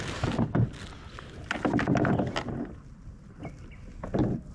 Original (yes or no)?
yes